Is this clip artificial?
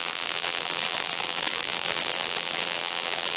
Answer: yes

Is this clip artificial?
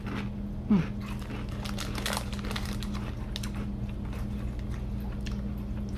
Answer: no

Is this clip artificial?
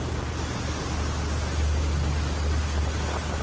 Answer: no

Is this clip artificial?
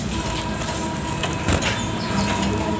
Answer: no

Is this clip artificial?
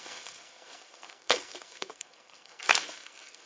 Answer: yes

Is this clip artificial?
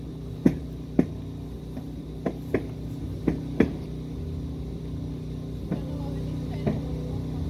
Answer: no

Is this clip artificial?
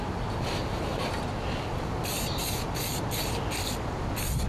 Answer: no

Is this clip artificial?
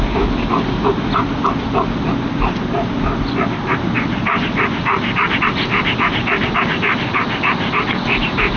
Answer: no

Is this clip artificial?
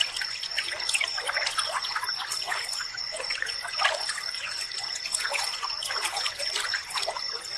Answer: yes